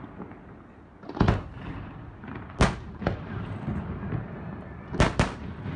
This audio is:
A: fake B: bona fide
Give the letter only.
B